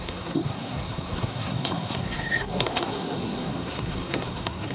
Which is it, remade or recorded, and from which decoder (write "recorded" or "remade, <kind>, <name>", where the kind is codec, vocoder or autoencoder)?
remade, codec, SNAC